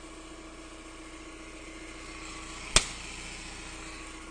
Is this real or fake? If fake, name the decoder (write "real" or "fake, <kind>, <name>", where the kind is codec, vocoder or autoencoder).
real